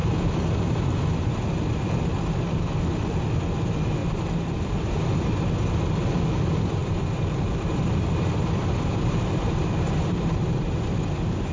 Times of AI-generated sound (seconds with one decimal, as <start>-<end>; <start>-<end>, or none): 4.0-5.4; 6.8-10.7